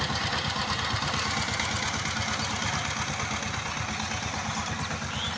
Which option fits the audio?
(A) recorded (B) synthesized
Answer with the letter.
A